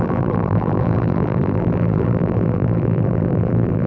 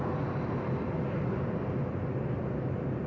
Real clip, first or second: second